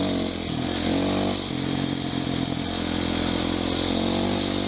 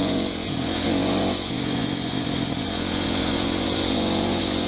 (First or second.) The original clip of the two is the first